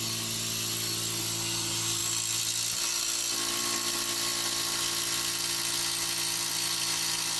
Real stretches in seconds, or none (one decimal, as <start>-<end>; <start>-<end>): 0.0-7.4